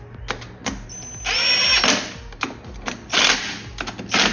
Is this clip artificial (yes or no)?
no